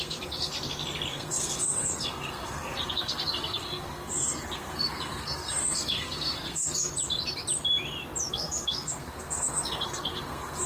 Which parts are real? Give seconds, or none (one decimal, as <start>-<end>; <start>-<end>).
0.5-1.1; 6.9-8.3